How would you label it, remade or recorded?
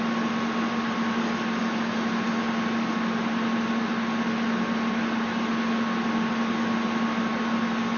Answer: recorded